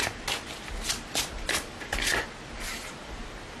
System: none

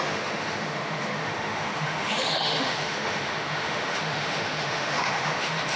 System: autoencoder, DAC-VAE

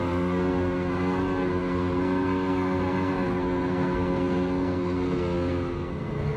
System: codec, SNAC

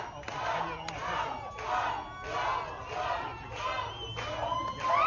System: none